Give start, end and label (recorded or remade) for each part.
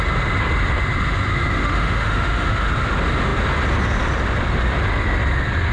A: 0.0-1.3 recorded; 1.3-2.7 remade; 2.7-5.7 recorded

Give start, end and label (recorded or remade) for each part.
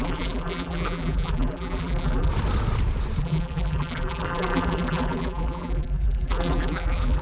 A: 0.0-2.3 remade; 2.3-3.2 recorded; 3.2-7.2 remade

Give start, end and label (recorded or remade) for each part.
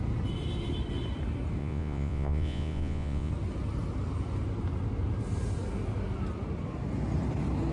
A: 0.0-1.6 recorded; 1.6-3.3 remade; 3.3-7.7 recorded